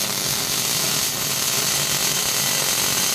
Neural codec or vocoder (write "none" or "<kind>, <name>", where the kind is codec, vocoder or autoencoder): none